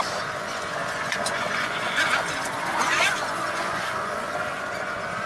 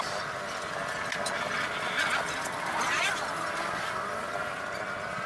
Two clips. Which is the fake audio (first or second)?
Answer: first